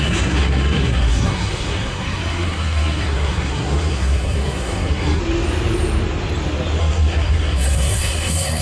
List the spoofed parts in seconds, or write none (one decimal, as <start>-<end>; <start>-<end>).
0.0-5.2; 6.8-8.6